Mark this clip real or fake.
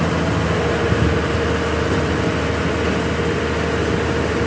real